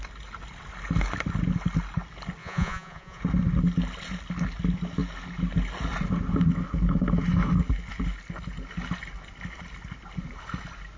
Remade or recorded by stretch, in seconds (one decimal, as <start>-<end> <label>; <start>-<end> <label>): 0.0-2.4 recorded; 2.4-3.2 remade; 3.2-11.0 recorded